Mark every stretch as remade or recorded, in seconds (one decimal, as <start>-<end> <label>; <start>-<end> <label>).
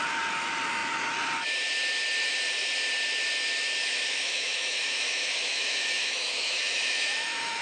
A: 0.0-3.8 recorded; 3.8-7.6 remade